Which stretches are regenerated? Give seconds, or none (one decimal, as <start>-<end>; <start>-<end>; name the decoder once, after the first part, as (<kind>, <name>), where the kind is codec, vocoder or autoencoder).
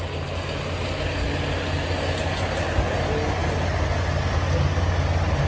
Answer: none